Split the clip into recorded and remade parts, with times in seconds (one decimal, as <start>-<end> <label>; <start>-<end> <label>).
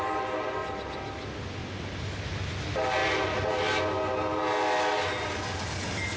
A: 0.0-1.6 recorded; 1.6-2.3 remade; 2.3-6.2 recorded